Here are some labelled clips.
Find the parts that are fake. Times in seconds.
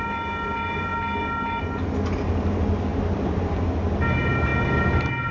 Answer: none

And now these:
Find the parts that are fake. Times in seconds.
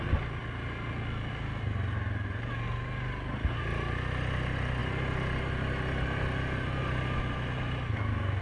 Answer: none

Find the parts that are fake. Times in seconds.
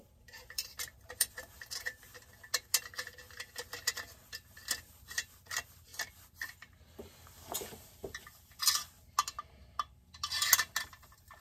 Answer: 0.0-2.1 (vocoder, BigVGAN v2); 2.8-3.2; 4.8-5.9; 10.8-11.4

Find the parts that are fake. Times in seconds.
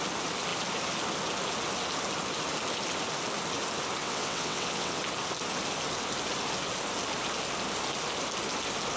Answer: 4.0-5.0 (vocoder, WaveNeXt)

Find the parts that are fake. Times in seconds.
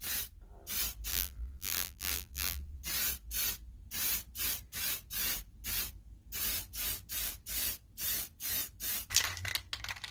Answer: 1.1-2.8 (vocoder, BigVGAN v2)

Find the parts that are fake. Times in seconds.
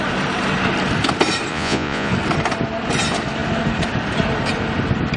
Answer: 1.5-2.1 (vocoder, Vocos)